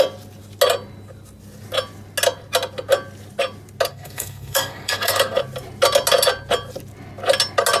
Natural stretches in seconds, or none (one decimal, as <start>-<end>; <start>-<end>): 0.0-3.9; 5.4-7.8